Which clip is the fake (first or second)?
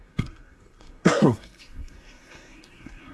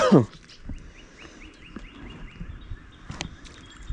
first